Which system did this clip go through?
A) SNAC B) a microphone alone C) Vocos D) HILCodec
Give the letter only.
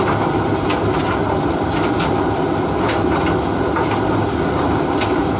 B